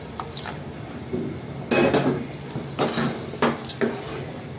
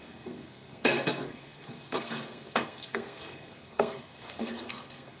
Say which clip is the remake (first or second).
second